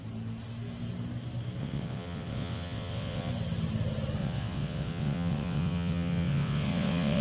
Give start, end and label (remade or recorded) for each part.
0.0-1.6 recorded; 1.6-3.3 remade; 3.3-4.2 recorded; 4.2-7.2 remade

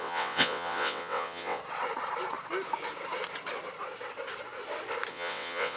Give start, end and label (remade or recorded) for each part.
0.0-1.6 remade; 1.6-5.1 recorded; 5.1-5.8 remade

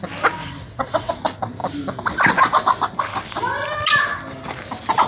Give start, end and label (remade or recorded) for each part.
0.0-0.4 recorded; 0.4-1.1 remade; 1.1-5.1 recorded